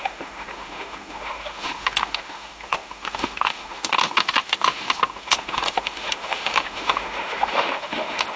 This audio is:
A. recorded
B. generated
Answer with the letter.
B